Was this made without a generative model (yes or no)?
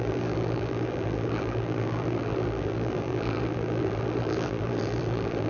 no